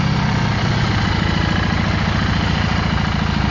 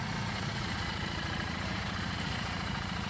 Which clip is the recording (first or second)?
first